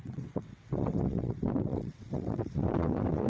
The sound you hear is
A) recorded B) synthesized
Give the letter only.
B